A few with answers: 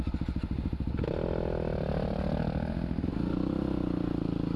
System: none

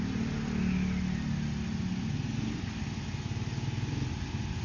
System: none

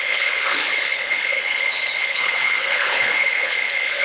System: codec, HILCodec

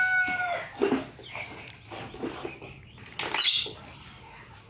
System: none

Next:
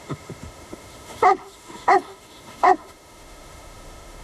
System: autoencoder, DAC-VAE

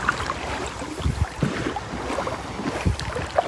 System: none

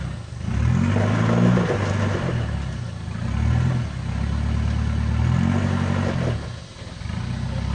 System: none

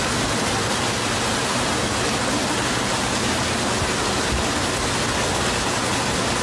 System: none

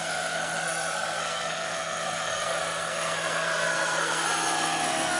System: codec, SNAC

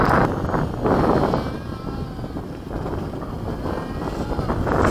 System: none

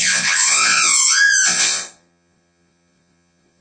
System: vocoder, Vocos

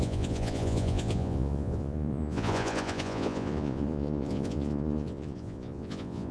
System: vocoder, Vocos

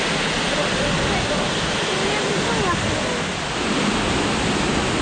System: none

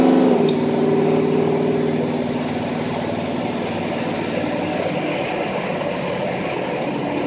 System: none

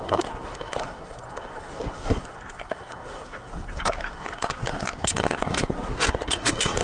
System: codec, SNAC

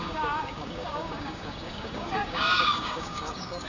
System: codec, DAC